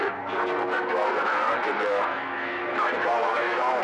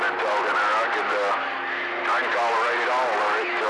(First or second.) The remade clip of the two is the first